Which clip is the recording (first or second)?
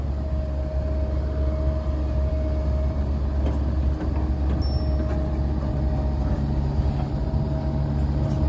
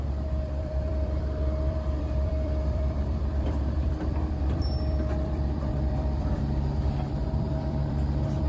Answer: first